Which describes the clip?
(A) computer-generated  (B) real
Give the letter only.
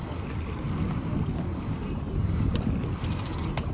B